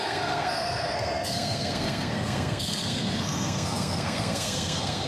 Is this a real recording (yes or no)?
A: no